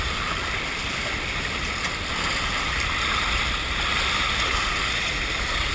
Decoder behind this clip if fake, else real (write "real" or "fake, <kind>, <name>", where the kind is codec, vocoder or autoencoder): real